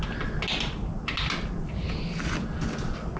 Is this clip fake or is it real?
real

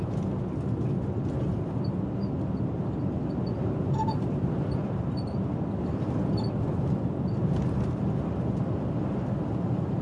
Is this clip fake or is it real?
real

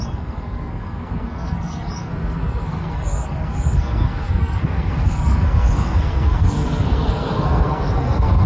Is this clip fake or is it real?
fake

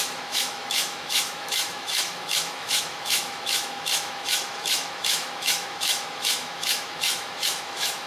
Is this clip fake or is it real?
fake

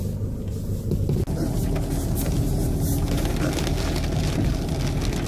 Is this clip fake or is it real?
real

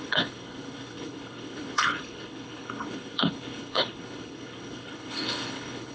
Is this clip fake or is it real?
fake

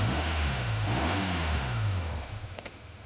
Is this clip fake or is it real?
fake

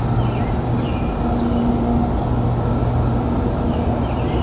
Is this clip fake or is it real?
real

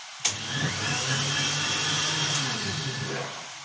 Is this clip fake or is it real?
real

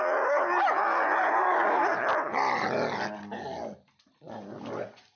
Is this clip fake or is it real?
real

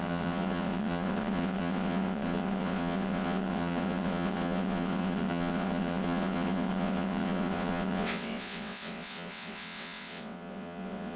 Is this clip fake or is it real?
fake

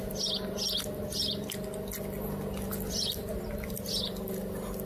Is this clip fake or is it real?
real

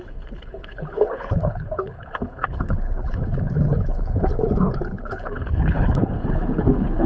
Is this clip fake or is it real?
fake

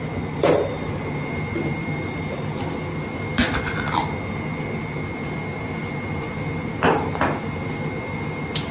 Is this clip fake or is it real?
real